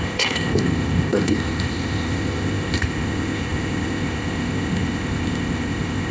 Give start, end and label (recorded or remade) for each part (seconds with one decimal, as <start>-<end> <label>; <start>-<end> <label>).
0.0-6.1 remade